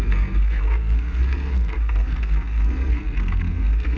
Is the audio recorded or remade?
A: remade